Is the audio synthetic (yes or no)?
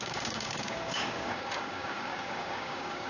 yes